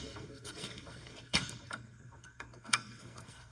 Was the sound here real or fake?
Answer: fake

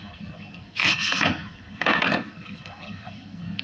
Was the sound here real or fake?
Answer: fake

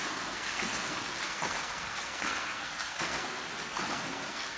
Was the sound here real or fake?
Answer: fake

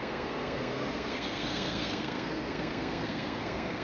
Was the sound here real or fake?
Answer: fake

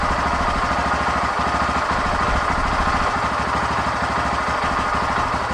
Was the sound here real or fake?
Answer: real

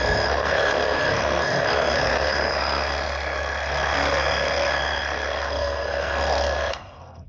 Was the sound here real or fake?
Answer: fake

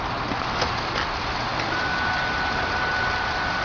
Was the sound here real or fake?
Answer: real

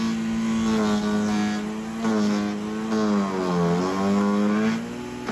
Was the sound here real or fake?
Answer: real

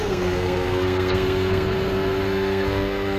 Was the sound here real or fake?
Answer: fake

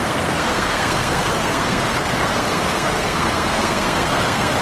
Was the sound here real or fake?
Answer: fake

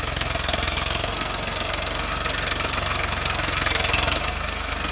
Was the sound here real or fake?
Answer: fake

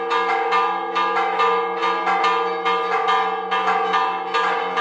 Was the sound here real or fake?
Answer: real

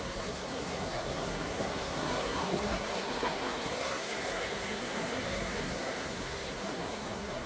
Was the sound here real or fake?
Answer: fake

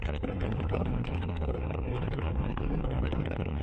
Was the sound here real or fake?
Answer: fake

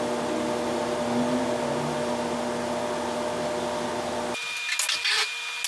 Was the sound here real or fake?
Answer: real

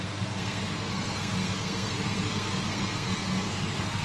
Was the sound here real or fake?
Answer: fake